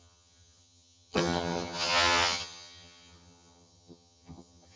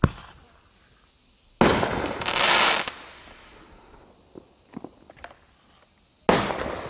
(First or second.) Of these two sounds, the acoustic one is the second